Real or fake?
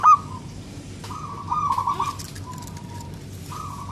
real